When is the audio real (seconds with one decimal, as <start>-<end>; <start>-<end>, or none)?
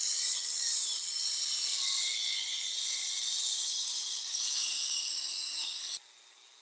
0.0-3.5; 5.8-6.6